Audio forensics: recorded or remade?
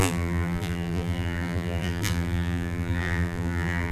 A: remade